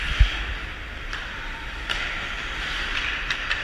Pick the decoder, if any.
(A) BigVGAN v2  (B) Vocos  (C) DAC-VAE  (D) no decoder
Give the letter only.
D